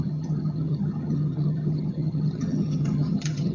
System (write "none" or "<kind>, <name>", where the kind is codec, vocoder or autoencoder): vocoder, HiFi-GAN